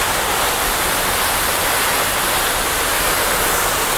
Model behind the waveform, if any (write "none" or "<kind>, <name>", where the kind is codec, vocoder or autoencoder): none